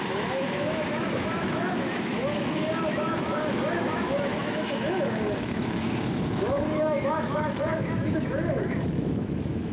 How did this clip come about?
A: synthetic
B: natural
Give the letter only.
A